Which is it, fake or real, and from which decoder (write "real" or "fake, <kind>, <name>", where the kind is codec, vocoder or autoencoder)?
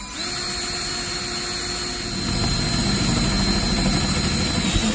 real